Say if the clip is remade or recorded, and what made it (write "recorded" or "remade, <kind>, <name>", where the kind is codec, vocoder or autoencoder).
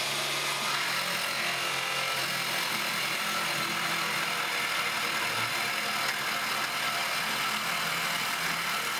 recorded